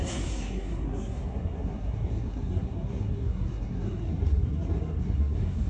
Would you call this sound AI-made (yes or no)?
yes